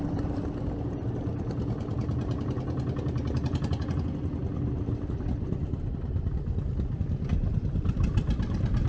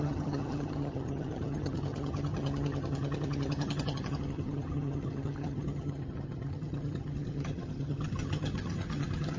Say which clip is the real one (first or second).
first